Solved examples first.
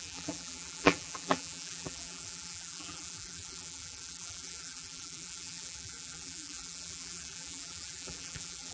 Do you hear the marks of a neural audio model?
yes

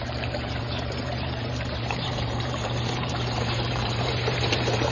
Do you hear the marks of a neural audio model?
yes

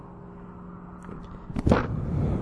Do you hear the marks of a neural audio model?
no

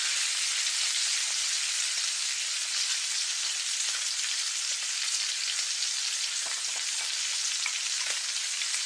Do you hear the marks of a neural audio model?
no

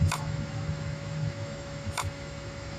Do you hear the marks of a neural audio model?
yes